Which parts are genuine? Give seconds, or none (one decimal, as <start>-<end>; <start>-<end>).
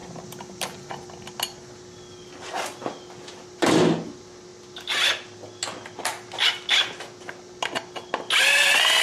0.0-9.0